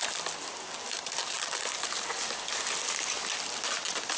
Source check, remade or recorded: recorded